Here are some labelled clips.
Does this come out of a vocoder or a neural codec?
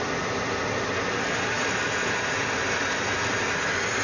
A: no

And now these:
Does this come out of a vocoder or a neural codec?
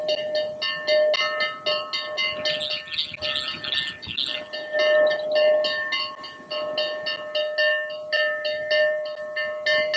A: no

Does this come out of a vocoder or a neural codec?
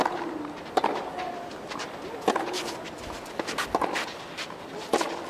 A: no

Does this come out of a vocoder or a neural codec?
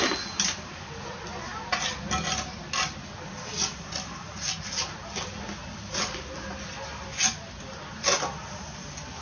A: no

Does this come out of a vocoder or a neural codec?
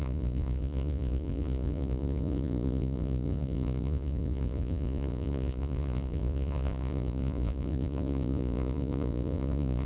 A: yes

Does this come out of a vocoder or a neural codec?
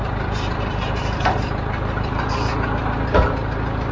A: yes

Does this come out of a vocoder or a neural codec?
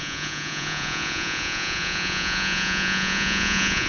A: yes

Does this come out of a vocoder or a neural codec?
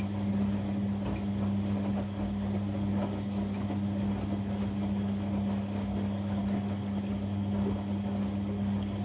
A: no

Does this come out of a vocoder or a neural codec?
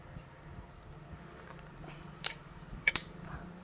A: yes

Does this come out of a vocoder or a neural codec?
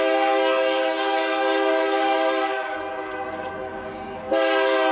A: yes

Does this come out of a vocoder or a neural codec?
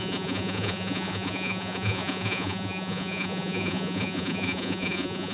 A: yes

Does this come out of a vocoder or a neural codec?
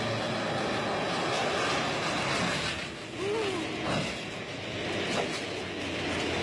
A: no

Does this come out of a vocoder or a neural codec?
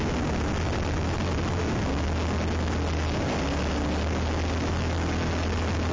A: no